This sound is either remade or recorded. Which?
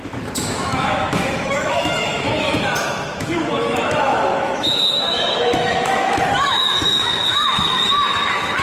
remade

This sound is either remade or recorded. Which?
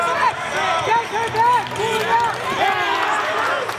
recorded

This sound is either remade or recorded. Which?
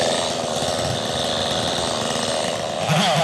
recorded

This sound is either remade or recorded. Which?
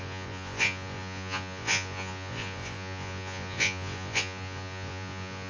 remade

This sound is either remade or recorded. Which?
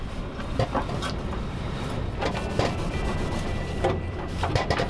remade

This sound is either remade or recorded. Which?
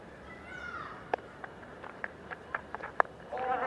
remade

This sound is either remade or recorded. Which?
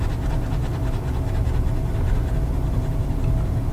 recorded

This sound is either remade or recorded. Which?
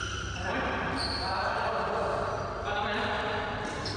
recorded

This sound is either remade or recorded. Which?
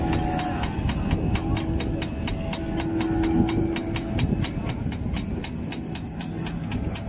recorded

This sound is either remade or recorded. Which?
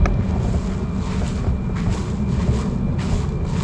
recorded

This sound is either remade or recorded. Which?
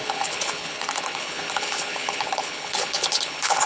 remade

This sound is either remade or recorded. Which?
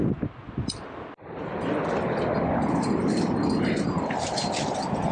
recorded